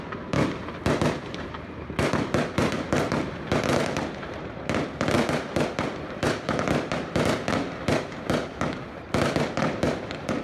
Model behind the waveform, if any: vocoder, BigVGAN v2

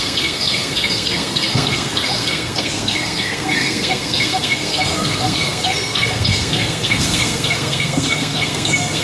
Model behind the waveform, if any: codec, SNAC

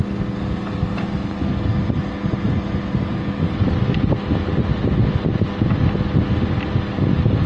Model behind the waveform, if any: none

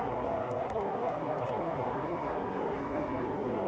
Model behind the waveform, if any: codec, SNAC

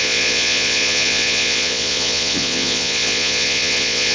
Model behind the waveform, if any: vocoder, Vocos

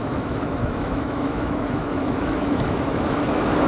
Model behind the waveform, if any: autoencoder, DAC-VAE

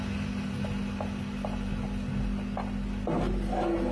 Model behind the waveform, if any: none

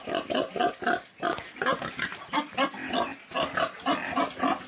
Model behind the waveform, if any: none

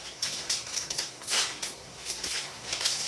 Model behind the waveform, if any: codec, SNAC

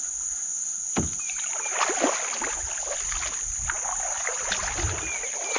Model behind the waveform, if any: none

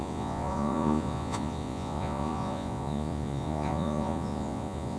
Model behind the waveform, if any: vocoder, Vocos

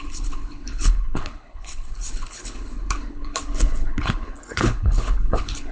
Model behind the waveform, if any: codec, HILCodec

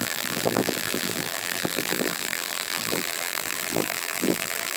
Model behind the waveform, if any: vocoder, BigVGAN v2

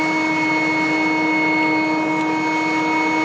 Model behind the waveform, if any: none